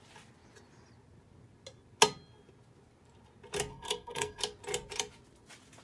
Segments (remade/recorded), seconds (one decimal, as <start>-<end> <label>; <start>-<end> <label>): 0.0-3.7 recorded; 3.7-4.4 remade; 4.4-5.8 recorded